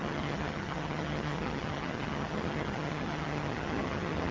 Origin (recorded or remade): remade